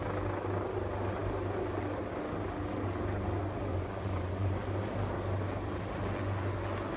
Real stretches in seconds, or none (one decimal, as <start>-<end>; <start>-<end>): 0.0-3.7; 4.6-7.0